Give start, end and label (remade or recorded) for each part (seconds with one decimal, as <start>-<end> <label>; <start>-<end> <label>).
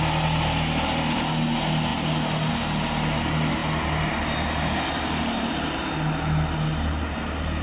0.0-7.6 recorded